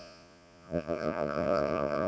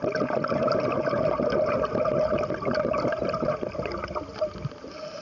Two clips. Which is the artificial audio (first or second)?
first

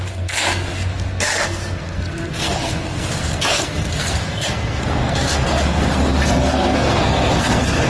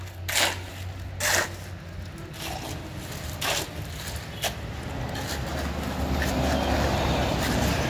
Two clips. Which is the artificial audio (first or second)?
first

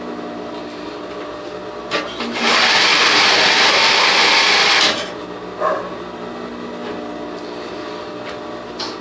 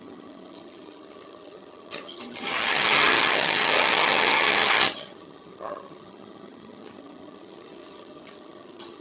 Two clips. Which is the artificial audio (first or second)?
second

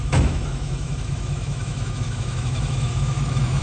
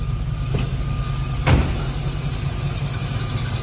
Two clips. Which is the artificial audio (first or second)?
first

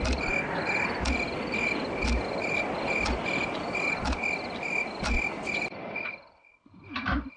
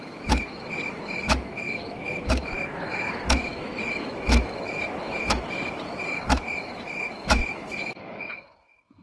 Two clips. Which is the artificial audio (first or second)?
second